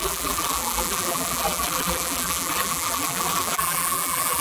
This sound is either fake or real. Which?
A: fake